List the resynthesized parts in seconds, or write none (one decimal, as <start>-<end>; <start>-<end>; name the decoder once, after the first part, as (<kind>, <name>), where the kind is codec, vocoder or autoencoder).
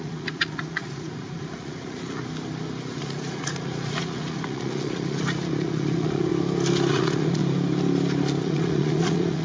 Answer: 0.0-2.2 (vocoder, Vocos); 2.9-6.3; 6.9-7.4; 8.4-9.4